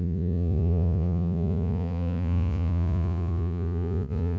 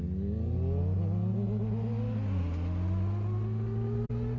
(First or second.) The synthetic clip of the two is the first